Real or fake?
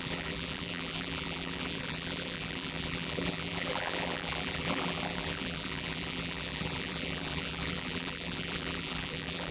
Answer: fake